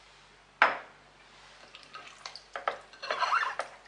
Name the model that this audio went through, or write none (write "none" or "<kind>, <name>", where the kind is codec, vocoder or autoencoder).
none